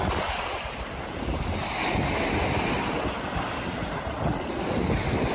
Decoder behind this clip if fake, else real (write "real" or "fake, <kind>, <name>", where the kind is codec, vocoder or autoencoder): real